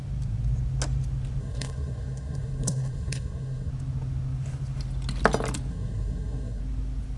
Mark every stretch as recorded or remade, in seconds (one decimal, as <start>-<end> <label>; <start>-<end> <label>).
0.0-1.4 recorded; 1.4-3.7 remade; 3.7-5.7 recorded; 5.7-6.6 remade; 6.6-7.2 recorded